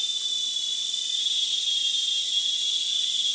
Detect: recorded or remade recorded